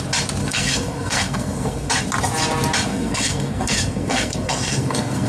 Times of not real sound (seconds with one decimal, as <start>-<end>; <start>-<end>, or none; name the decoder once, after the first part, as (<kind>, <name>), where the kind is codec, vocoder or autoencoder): 0.4-1.9 (codec, SNAC); 2.9-5.3